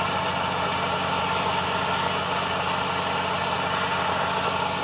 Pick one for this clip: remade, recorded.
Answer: recorded